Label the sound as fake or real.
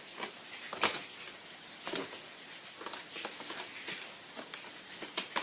real